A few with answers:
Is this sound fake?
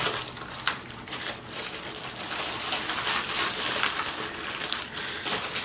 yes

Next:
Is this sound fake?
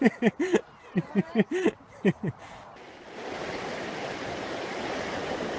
yes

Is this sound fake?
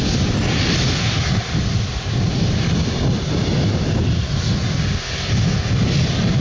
no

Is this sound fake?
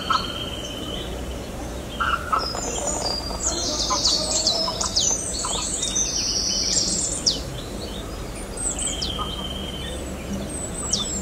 yes